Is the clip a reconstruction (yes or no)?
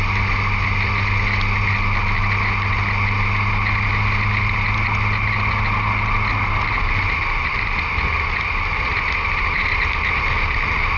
no